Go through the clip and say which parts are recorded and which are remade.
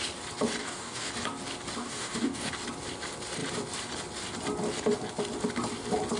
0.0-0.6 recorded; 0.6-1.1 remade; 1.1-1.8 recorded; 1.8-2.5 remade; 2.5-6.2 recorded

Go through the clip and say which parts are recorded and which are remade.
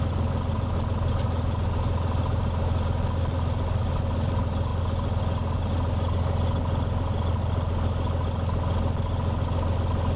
0.0-10.2 recorded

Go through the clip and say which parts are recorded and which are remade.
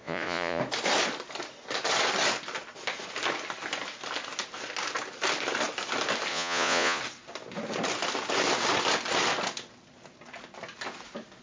0.0-0.6 remade; 0.6-6.3 recorded; 6.3-7.0 remade; 7.0-11.4 recorded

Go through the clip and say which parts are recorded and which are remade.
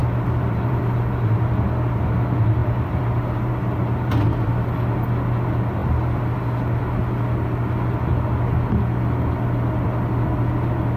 0.0-0.8 remade; 0.8-2.6 recorded; 2.6-4.1 remade; 4.1-11.0 recorded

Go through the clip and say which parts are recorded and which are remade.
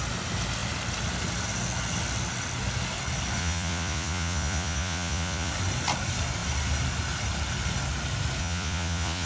0.0-3.4 recorded; 3.4-5.5 remade; 5.5-8.4 recorded; 8.4-9.3 remade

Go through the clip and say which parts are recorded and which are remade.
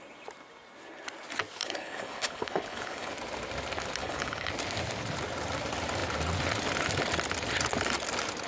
0.0-1.6 recorded; 1.6-3.1 remade; 3.1-4.0 recorded; 4.0-4.5 remade; 4.5-8.5 recorded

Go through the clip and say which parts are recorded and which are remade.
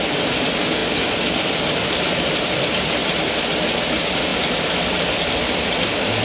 0.0-0.8 recorded; 0.8-1.6 remade; 1.6-6.2 recorded